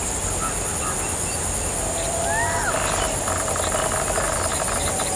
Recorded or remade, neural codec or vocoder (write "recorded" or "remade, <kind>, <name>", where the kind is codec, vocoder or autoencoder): recorded